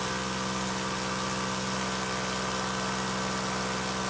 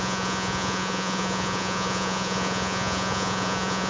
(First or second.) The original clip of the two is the first